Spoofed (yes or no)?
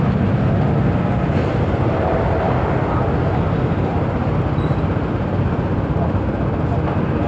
no